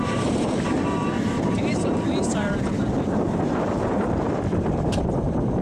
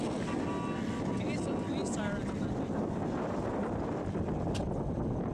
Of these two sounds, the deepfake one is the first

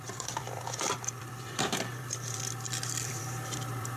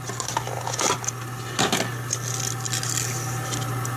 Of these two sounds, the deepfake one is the first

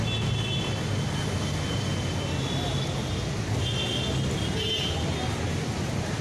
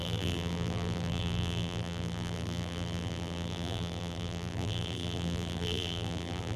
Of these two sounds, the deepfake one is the second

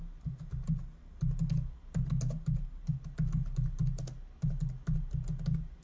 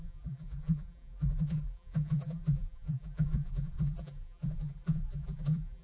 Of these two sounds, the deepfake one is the second